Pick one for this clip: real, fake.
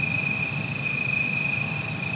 real